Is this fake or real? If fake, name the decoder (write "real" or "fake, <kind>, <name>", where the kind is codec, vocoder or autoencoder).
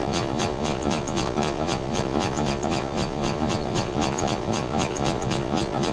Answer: fake, vocoder, Vocos